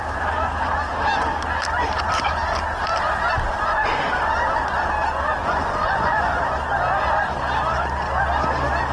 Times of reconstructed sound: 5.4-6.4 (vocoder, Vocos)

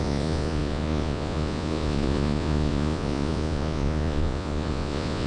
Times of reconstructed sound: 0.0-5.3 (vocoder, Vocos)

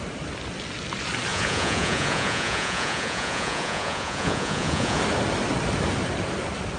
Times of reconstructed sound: 1.3-5.0 (vocoder, Vocos)